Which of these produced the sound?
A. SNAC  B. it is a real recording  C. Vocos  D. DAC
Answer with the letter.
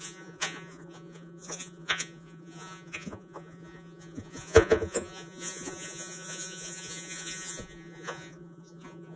C